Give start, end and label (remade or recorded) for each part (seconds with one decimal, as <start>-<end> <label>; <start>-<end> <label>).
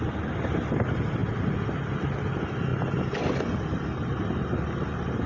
0.0-5.3 recorded